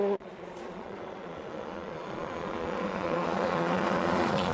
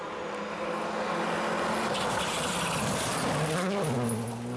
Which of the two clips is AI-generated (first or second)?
first